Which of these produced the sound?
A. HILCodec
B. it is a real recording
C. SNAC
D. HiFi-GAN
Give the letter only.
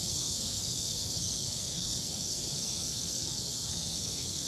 C